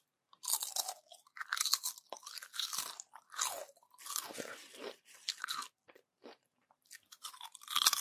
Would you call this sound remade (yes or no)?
no